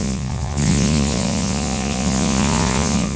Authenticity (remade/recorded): remade